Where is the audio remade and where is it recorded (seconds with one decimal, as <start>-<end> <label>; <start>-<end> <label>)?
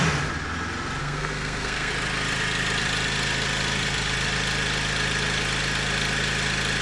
0.0-1.0 recorded; 1.0-1.9 remade; 1.9-6.8 recorded